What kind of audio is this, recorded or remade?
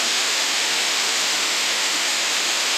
remade